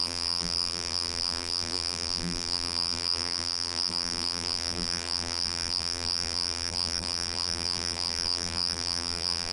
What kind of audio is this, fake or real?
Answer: fake